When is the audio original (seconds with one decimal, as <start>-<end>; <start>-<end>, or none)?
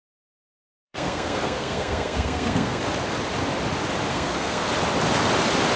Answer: 0.0-0.5; 2.8-4.1; 4.7-5.8